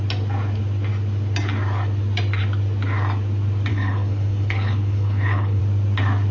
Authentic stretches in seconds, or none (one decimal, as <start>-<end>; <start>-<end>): 0.0-3.7; 5.6-6.3